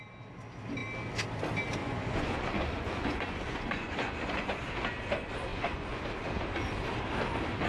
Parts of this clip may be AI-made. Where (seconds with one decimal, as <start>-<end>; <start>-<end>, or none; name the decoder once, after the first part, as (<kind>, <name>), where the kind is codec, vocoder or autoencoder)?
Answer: 1.8-4.6 (vocoder, Vocos); 5.5-6.0